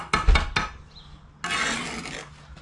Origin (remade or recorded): recorded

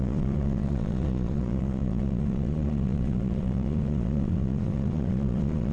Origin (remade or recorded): remade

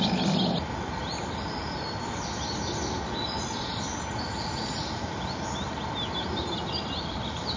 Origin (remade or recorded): recorded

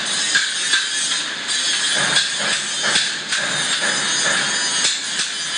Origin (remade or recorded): recorded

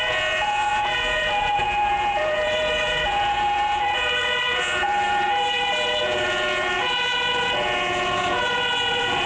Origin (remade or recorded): remade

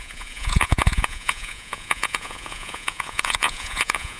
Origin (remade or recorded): remade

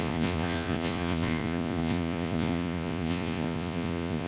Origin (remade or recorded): remade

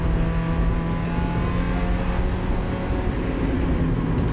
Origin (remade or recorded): recorded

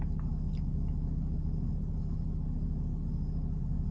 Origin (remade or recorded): recorded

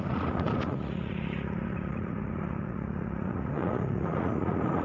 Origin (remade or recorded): remade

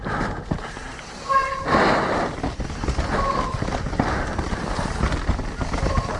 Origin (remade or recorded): recorded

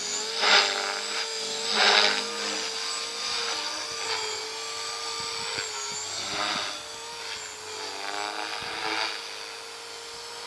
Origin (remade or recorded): recorded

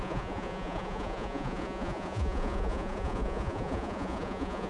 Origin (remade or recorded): remade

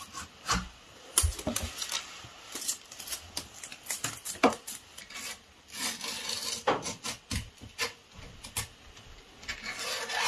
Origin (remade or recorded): recorded